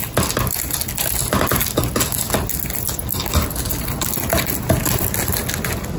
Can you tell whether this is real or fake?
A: real